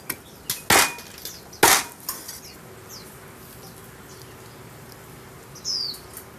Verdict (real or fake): real